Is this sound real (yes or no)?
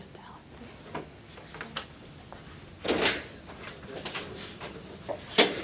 yes